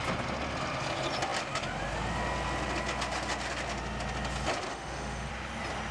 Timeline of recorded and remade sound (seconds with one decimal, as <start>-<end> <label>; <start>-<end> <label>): 0.0-4.7 recorded; 4.7-5.3 remade; 5.3-5.9 recorded